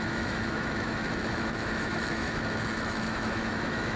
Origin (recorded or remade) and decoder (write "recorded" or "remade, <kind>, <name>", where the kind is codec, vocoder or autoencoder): remade, autoencoder, DAC-VAE